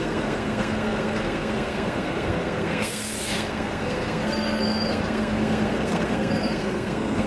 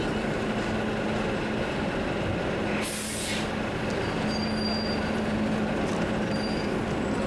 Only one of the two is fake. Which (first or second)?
first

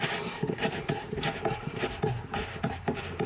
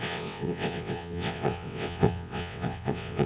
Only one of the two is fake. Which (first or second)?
second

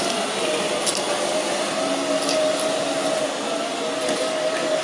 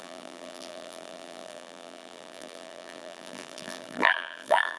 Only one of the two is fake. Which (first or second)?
second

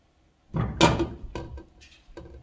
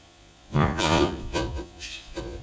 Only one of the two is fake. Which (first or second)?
second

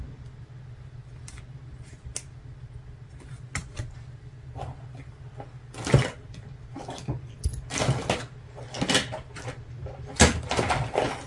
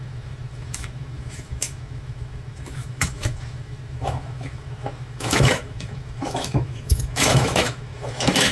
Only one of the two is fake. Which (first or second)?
second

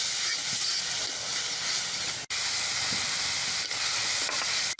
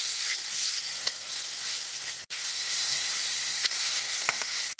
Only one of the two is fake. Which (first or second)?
second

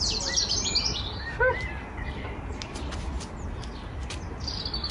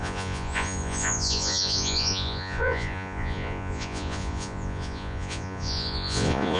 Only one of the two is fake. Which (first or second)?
second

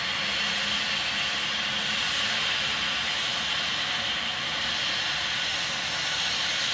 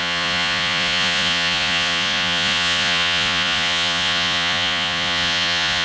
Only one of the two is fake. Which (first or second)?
second